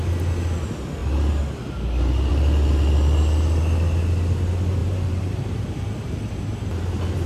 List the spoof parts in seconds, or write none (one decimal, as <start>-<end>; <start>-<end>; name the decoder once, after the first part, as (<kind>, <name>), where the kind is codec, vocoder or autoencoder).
4.8-6.3 (vocoder, BigVGAN v2)

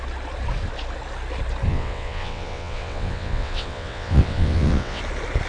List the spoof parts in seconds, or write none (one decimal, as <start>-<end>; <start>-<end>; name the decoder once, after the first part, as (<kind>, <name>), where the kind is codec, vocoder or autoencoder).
1.7-5.0 (vocoder, WaveNeXt)

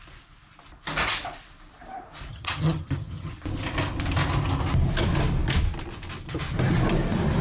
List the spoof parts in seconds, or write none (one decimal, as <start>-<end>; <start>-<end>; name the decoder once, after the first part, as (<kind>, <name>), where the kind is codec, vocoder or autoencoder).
2.3-3.3 (vocoder, HiFi-GAN)